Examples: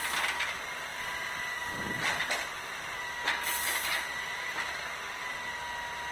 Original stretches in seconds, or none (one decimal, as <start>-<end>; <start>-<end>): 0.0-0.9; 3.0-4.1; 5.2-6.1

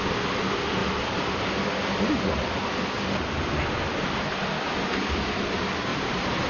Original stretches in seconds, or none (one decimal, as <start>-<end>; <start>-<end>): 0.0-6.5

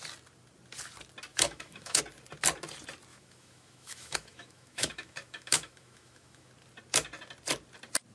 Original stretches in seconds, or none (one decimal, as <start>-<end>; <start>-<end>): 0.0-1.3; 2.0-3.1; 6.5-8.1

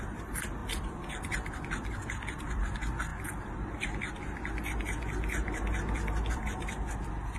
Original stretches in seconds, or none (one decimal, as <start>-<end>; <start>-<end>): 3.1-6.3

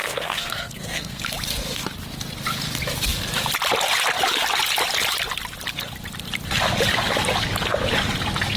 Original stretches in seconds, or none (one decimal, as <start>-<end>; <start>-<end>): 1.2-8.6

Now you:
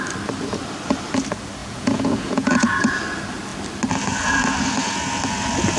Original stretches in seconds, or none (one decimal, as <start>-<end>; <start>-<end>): 0.0-1.6; 3.0-5.8

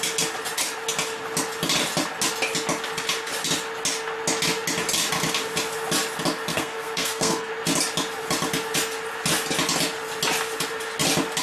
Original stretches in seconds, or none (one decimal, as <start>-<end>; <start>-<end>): 0.0-6.5; 7.5-11.4

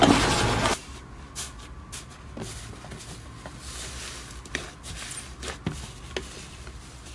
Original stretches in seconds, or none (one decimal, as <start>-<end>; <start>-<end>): 0.0-7.1